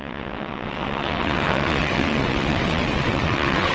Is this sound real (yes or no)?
no